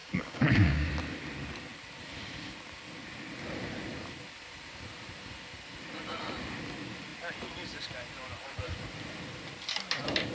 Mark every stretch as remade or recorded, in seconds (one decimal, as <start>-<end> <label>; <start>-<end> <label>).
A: 0.0-0.9 remade; 0.9-10.3 recorded